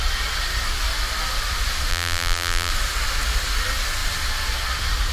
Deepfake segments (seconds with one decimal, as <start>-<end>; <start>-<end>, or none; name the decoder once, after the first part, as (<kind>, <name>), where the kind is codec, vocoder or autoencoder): 1.9-2.7 (vocoder, BigVGAN v2)